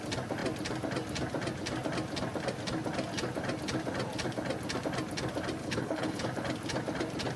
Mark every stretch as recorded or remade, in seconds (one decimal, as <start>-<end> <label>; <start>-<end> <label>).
0.0-5.6 recorded; 5.6-6.2 remade; 6.2-7.4 recorded